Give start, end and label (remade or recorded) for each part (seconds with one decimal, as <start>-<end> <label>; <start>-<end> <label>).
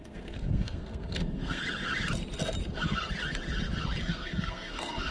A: 0.0-1.6 remade; 1.6-4.0 recorded; 4.0-5.1 remade